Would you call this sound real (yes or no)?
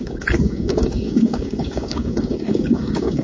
no